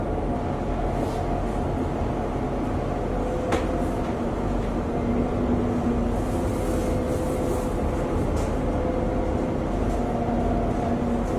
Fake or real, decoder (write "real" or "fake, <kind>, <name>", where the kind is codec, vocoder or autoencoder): real